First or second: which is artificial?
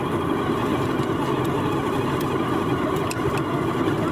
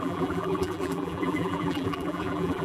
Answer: second